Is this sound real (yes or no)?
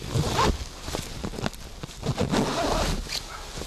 yes